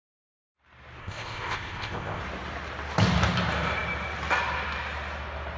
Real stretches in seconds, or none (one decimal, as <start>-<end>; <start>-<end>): 0.0-1.0; 2.2-5.6